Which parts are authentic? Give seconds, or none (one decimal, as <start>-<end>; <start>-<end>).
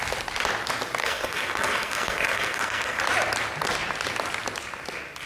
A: 0.0-1.0; 3.0-5.3